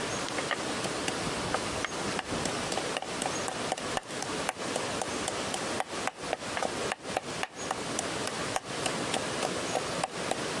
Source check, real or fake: real